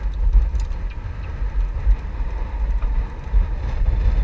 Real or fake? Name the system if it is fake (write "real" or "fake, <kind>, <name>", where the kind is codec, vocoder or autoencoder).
real